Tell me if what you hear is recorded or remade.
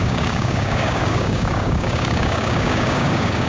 remade